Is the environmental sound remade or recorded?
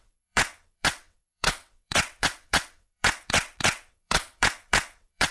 remade